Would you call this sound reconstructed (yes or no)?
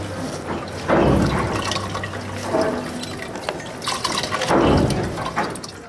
no